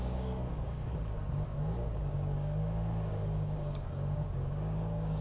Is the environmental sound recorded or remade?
remade